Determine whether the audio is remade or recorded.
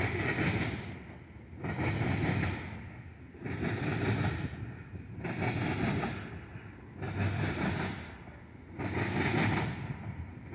recorded